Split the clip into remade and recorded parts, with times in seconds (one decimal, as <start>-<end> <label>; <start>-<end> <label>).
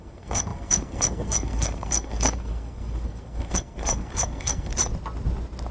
0.0-4.7 remade; 4.7-5.7 recorded